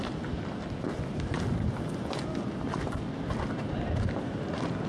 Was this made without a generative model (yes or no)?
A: yes